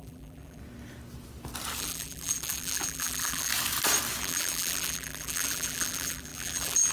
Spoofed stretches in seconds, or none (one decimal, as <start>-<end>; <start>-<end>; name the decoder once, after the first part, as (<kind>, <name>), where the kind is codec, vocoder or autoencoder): 0.0-0.6 (vocoder, BigVGAN v2); 1.8-3.5; 4.2-6.9